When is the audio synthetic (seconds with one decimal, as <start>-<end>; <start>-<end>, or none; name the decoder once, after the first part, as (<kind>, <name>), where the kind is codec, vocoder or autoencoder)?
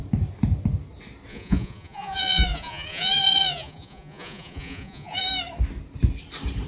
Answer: 1.3-5.2 (vocoder, Vocos)